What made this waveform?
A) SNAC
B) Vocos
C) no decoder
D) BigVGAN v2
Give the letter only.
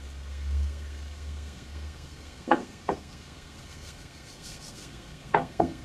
A